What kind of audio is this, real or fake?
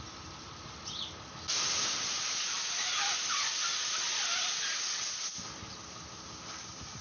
real